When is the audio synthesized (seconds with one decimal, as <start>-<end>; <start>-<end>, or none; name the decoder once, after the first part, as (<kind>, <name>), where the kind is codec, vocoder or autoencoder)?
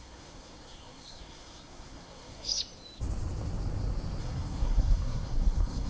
0.0-2.6 (codec, SNAC); 4.2-5.9